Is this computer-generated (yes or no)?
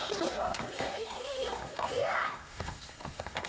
yes